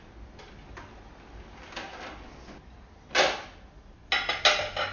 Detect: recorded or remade recorded